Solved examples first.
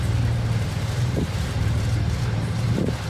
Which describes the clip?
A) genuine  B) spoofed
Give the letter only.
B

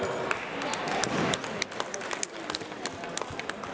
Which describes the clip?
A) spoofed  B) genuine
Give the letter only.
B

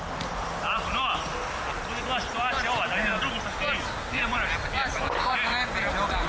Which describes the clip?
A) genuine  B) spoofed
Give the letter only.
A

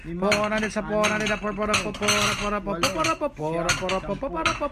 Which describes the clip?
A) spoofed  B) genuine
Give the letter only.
B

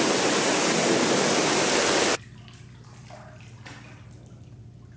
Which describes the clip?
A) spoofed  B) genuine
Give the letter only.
B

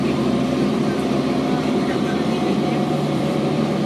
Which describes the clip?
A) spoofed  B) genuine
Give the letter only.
A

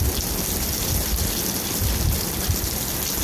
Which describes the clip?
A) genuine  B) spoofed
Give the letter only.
A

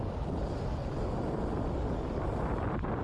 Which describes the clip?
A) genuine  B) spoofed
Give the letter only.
B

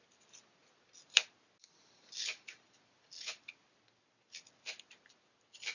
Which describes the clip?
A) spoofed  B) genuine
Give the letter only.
B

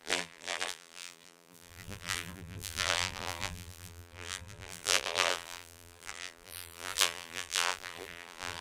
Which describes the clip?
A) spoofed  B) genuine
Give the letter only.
A